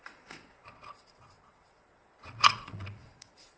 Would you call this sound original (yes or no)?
no